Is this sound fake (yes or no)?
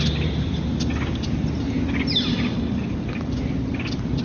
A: no